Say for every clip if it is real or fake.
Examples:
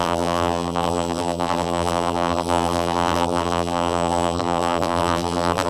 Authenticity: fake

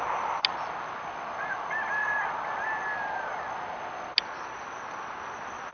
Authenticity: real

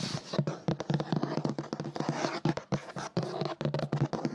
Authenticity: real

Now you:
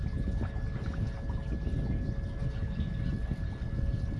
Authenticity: real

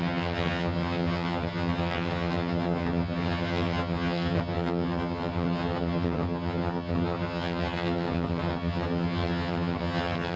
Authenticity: fake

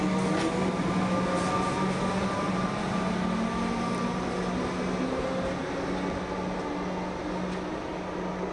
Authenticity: real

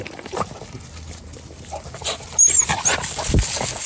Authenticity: real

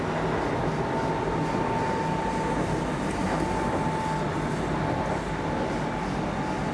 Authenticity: real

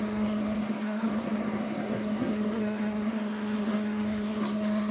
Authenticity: fake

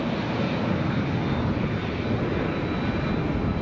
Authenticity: real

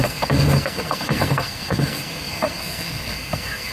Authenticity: fake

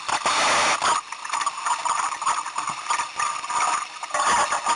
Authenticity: real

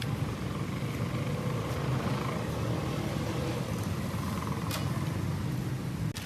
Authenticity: real